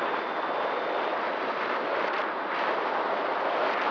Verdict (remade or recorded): remade